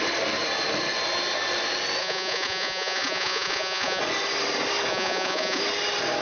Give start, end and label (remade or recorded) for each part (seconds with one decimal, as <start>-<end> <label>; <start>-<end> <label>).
0.0-2.0 recorded; 2.0-4.0 remade; 4.0-4.9 recorded; 4.9-5.6 remade; 5.6-6.2 recorded